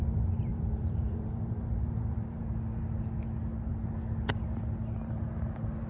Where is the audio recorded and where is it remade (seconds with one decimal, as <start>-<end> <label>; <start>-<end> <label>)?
0.0-0.5 recorded; 0.5-2.4 remade; 2.4-5.9 recorded

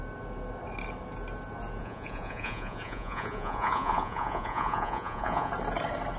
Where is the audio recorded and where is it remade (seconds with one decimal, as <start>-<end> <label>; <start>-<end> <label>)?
0.0-1.8 recorded; 1.8-5.5 remade; 5.5-6.2 recorded